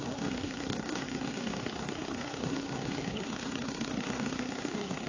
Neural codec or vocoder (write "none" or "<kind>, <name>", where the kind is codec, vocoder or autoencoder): codec, SNAC